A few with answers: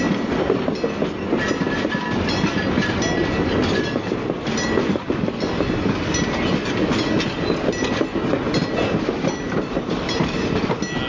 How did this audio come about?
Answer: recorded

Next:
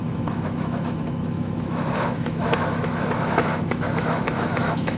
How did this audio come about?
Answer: remade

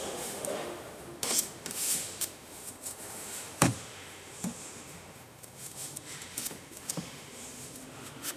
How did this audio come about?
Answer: remade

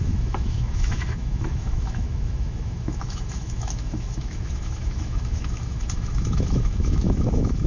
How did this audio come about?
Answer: remade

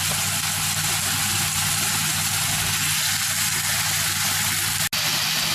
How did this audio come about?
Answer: recorded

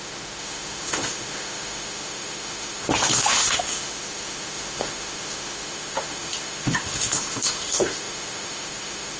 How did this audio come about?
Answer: remade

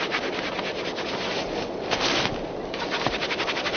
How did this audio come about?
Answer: recorded